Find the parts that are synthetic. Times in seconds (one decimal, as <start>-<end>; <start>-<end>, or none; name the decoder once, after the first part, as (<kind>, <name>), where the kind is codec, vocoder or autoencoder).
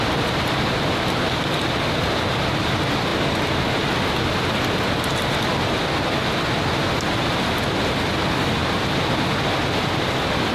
none